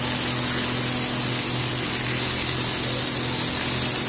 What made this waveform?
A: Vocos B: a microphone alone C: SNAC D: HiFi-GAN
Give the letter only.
B